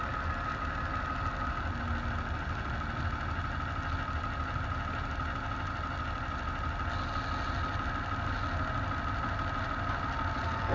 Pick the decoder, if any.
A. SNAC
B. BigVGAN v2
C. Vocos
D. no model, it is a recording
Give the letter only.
D